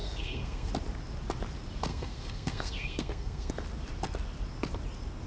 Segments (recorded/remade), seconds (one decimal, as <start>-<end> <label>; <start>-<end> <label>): 0.0-0.7 remade; 0.7-1.9 recorded; 1.9-3.5 remade; 3.5-5.3 recorded